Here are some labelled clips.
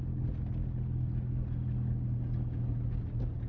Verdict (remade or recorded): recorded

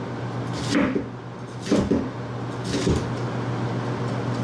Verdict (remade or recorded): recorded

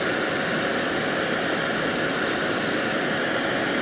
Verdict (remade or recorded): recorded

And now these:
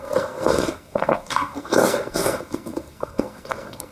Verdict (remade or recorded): remade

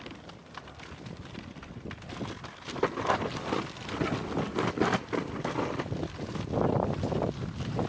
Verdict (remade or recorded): recorded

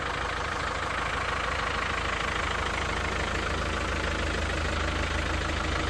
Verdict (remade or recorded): recorded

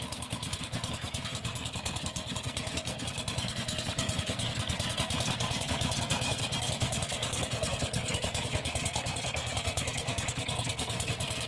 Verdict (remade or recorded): remade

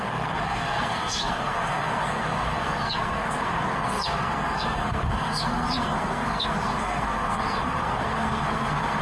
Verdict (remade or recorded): remade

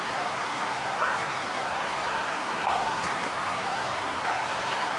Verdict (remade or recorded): remade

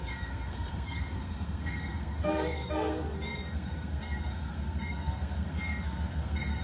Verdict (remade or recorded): remade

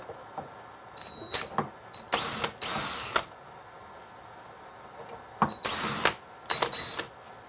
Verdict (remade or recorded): recorded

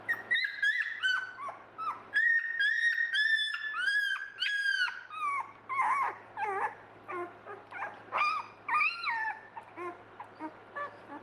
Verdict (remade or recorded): recorded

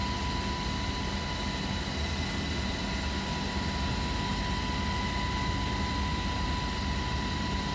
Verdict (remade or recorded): recorded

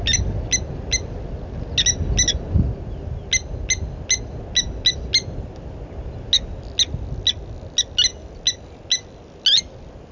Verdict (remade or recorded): recorded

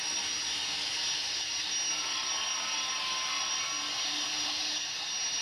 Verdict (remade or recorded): recorded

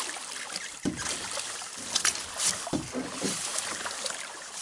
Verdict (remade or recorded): recorded